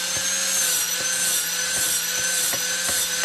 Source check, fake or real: real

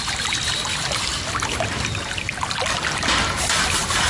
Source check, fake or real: real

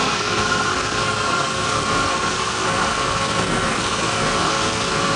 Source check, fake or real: fake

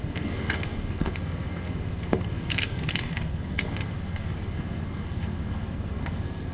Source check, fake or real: fake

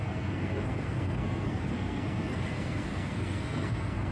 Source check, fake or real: fake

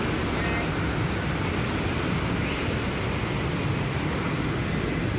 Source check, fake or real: real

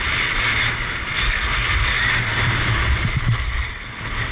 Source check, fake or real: real